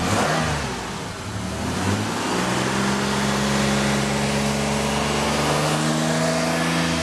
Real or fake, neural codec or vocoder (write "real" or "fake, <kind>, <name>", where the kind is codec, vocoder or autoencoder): real